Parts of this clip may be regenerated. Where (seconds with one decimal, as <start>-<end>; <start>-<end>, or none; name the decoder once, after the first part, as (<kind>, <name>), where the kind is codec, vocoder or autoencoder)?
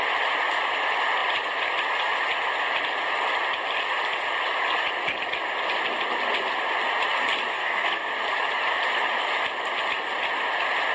7.5-8.1 (codec, SNAC)